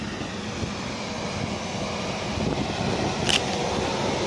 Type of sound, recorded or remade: recorded